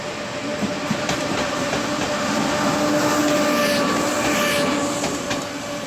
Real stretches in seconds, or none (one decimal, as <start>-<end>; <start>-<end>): 0.0-0.5; 1.7-5.9